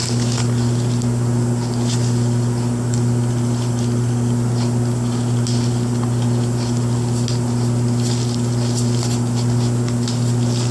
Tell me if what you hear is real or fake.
real